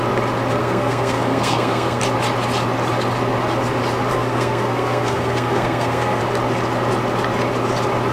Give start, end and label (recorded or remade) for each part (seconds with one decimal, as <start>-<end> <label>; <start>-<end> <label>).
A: 0.0-0.6 recorded; 0.6-2.0 remade; 2.0-4.1 recorded; 4.1-6.2 remade; 6.2-8.1 recorded